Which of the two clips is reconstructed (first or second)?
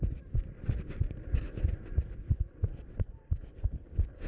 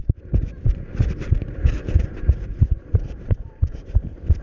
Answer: second